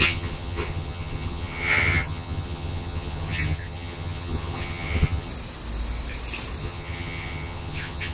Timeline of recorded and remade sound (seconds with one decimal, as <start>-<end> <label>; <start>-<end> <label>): 0.0-5.3 remade; 5.3-6.6 recorded; 6.6-8.1 remade